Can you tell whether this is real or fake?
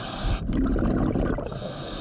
real